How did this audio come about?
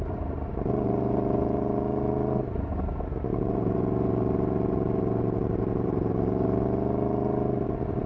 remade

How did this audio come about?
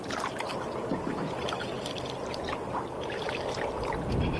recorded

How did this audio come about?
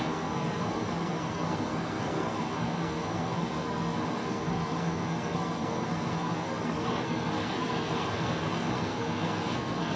remade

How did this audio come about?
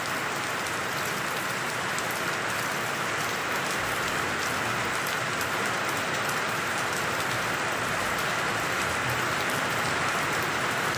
recorded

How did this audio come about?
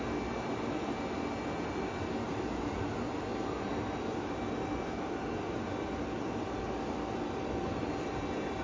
recorded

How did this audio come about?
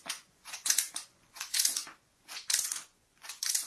remade